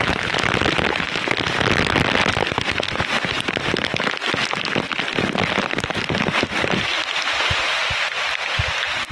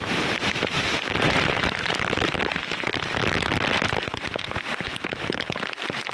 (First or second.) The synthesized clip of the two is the second